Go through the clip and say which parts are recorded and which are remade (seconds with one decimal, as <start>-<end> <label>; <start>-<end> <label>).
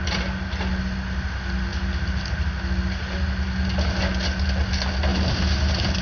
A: 0.0-6.0 recorded